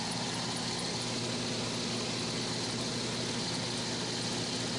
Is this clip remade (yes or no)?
no